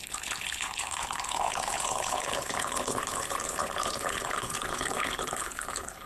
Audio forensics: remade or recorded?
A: remade